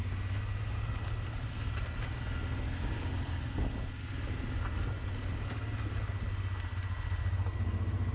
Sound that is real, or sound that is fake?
real